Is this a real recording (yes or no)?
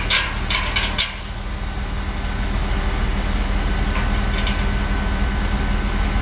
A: yes